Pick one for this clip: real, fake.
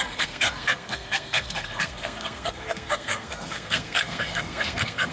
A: fake